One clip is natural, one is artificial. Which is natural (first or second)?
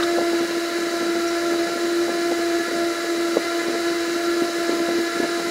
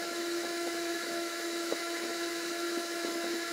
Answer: first